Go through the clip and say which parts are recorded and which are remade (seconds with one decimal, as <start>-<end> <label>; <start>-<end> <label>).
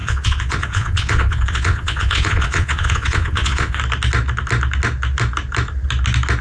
0.0-3.8 remade; 3.8-6.4 recorded